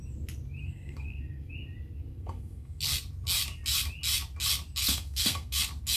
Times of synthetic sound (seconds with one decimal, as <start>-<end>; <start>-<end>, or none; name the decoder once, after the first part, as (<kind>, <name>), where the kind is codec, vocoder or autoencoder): 0.6-1.5 (codec, SNAC); 2.1-2.8; 4.8-5.6